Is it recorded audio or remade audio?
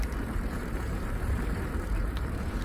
remade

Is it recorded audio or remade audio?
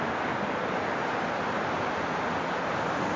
recorded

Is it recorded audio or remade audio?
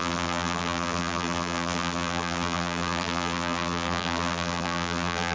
remade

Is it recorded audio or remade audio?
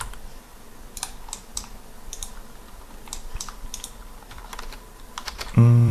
remade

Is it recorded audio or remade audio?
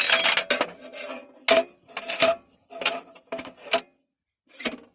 recorded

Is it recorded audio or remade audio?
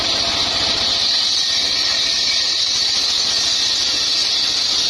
recorded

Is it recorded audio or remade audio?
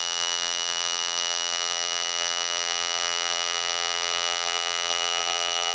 remade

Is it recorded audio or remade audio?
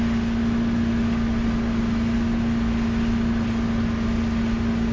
recorded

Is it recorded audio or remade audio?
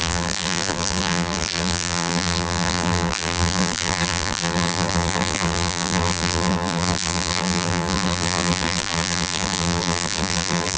remade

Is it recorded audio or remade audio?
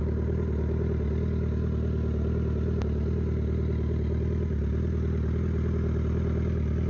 recorded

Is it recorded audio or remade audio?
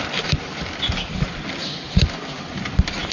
recorded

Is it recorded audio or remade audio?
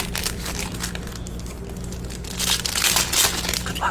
recorded